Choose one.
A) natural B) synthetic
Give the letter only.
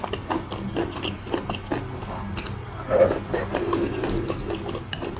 A